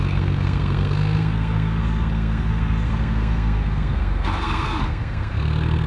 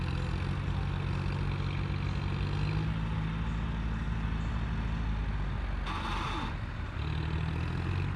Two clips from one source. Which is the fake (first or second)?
first